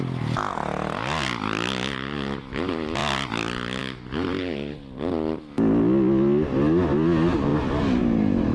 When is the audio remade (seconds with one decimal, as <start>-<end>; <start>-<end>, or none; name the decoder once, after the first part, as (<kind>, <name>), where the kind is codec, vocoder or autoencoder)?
none